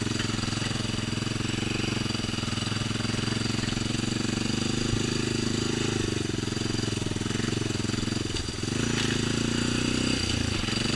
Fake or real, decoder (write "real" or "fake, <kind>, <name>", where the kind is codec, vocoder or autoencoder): real